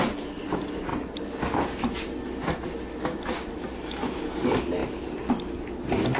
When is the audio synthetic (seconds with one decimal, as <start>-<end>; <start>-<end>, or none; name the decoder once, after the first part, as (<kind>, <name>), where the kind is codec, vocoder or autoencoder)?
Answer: none